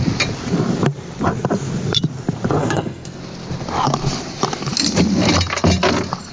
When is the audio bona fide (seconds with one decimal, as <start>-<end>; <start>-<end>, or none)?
0.0-2.6; 3.2-6.3

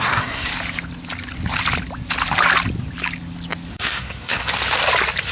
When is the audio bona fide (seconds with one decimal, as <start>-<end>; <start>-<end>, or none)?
0.5-3.7; 4.4-5.3

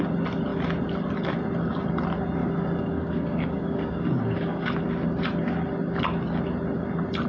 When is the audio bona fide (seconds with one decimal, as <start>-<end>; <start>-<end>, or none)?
0.0-2.4; 4.8-7.3

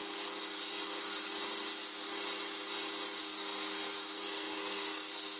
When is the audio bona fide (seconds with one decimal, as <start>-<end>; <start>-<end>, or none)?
0.0-3.2

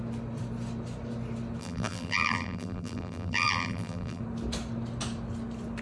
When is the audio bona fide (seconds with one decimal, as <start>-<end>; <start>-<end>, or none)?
0.0-1.6; 4.2-5.8

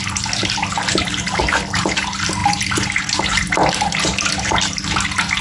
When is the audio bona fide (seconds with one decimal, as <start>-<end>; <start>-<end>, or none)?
0.0-5.4

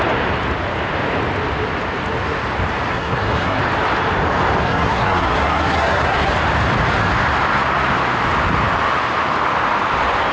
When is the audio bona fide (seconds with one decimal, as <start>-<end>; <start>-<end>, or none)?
0.0-2.9; 3.6-4.6; 6.3-10.3

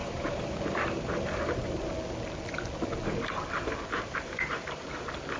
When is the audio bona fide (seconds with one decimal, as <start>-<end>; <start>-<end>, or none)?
1.9-3.9; 4.9-5.4